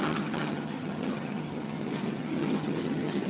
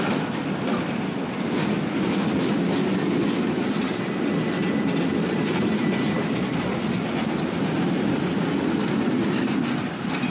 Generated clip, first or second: first